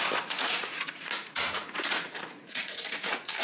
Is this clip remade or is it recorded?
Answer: remade